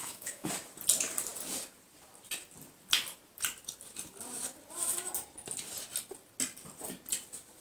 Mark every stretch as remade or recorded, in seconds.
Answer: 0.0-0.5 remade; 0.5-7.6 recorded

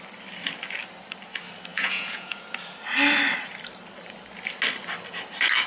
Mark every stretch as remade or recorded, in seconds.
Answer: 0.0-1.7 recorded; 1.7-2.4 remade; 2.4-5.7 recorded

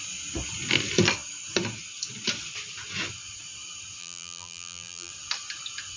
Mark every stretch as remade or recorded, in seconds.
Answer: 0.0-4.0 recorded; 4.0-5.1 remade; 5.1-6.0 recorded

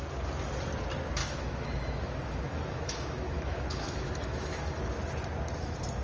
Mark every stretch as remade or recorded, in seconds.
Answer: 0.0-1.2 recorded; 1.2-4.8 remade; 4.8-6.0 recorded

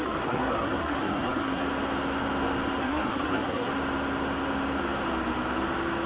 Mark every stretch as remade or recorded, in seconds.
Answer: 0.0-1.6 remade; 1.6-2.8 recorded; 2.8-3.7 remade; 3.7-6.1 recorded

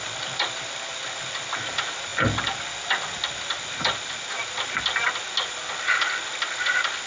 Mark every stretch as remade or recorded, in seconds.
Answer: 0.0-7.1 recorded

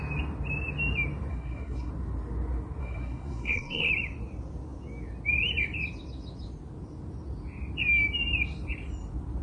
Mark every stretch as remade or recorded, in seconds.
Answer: 0.0-1.3 recorded; 1.3-1.9 remade; 1.9-2.8 recorded; 2.8-3.9 remade; 3.9-9.4 recorded

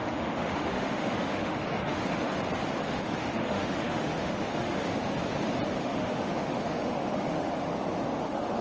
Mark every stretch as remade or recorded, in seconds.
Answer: 0.0-2.3 remade; 2.3-2.8 recorded; 2.8-4.9 remade; 4.9-5.8 recorded; 5.8-7.7 remade; 7.7-8.2 recorded; 8.2-8.6 remade